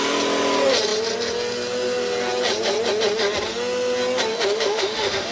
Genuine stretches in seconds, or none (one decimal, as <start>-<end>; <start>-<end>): 0.0-4.3